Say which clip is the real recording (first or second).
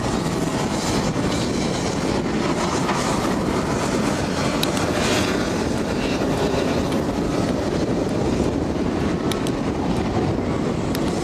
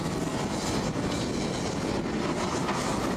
second